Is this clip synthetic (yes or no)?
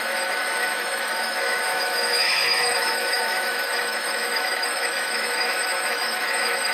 yes